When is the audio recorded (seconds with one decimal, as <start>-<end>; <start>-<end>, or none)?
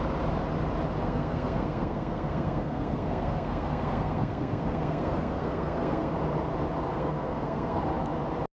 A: 0.0-1.0; 6.1-6.9; 7.8-8.5